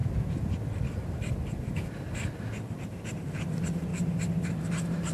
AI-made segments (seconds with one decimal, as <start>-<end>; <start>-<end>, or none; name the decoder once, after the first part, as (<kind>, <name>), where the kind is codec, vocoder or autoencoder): none